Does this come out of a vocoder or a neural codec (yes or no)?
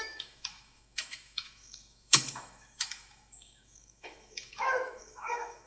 yes